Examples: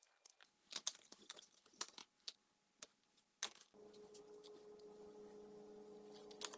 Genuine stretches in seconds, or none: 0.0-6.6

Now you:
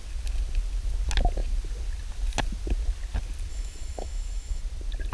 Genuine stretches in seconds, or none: 0.0-3.5; 4.6-5.1

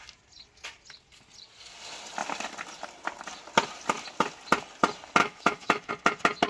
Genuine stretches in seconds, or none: 0.0-5.2; 5.9-6.5

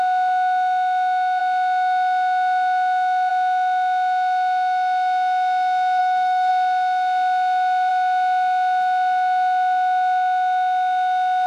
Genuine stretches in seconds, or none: 0.0-6.0; 6.5-11.5

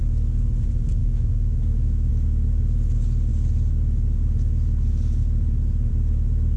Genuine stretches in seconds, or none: 0.0-1.0; 2.1-6.6

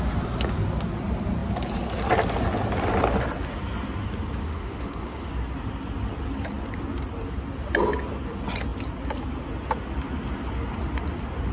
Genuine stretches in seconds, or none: 0.0-4.4; 5.3-11.5

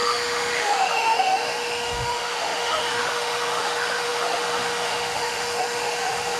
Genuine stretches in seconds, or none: none